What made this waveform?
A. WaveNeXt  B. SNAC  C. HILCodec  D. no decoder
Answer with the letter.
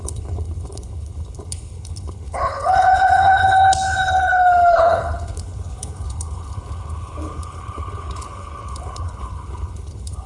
C